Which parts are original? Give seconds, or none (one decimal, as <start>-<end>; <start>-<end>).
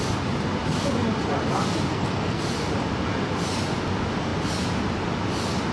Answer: 0.0-1.9; 2.4-5.7